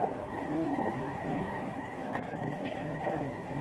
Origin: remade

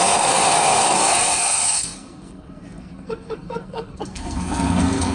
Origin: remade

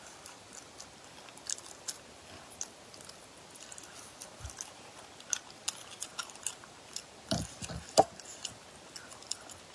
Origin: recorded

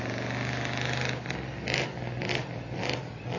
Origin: recorded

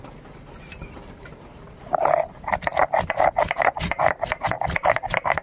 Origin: recorded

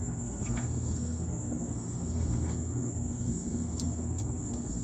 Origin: remade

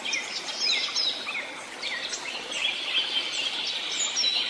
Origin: recorded